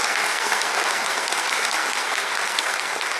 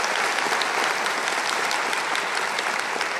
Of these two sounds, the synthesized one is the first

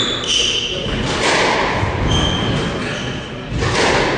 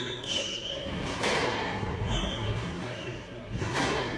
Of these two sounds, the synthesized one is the second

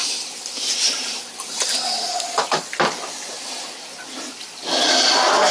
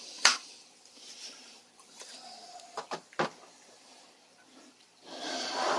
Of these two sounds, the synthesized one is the second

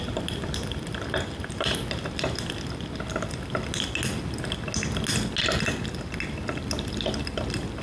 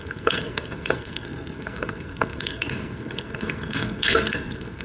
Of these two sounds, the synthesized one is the second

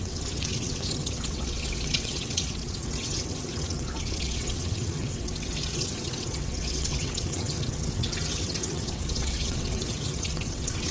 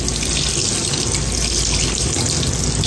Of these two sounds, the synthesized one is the first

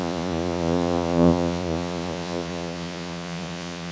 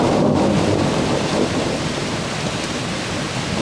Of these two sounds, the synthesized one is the first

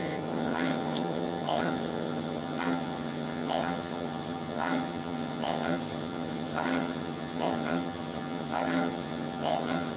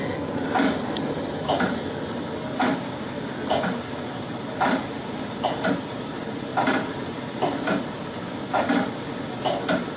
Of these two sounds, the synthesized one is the first